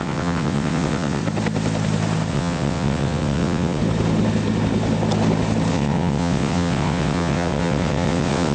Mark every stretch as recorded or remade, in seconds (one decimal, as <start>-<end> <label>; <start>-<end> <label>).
0.0-1.2 remade; 1.2-2.3 recorded; 2.3-3.8 remade; 3.8-5.7 recorded; 5.7-8.5 remade